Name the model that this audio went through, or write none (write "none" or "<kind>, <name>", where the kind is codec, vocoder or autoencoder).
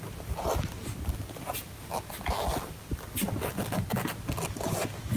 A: none